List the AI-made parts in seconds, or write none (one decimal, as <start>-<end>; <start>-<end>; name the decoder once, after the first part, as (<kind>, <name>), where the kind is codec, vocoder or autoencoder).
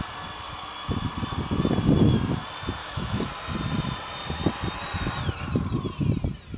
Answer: 2.8-3.3 (autoencoder, DAC-VAE)